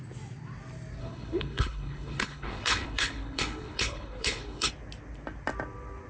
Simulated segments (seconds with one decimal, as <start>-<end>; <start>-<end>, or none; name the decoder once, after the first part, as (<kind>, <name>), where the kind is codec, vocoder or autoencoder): 1.0-4.7 (codec, HILCodec)